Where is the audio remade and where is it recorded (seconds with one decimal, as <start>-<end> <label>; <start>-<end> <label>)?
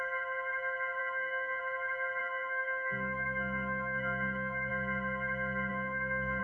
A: 0.0-1.0 recorded; 1.0-1.6 remade; 1.6-2.2 recorded; 2.2-4.7 remade; 4.7-5.7 recorded; 5.7-6.4 remade